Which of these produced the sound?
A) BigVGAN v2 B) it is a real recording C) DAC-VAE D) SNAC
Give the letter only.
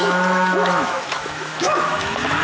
C